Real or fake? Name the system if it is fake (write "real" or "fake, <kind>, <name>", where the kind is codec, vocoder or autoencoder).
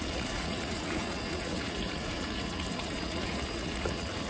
fake, vocoder, Vocos